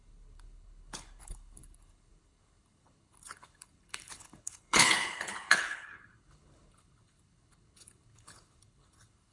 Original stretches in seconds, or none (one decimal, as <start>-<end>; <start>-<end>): none